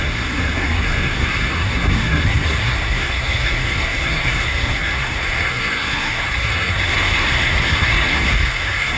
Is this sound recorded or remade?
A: remade